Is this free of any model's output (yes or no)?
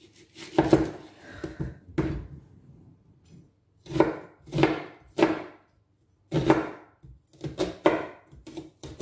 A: yes